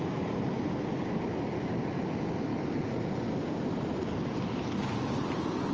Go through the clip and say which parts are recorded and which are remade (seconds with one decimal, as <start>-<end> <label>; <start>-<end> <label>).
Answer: 0.0-5.7 recorded